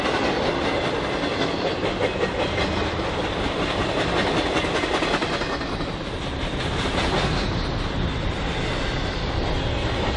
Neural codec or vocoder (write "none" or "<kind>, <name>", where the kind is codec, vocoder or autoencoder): none